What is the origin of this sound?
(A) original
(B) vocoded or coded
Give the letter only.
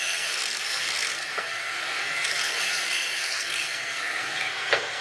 B